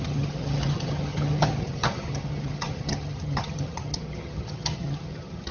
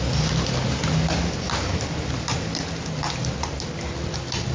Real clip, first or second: second